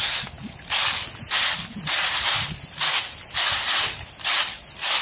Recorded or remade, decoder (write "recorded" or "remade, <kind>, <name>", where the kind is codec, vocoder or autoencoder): recorded